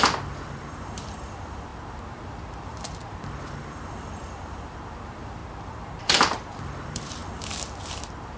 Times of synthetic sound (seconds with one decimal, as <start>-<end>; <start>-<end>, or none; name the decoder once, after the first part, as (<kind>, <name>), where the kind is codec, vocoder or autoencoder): 0.0-5.4 (vocoder, BigVGAN v2); 6.0-7.2; 7.9-8.4